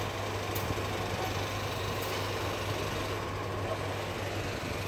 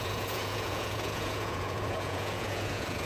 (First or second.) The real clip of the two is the first